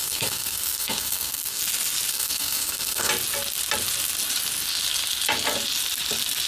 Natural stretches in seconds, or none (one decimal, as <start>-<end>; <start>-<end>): 1.6-2.1; 3.1-6.5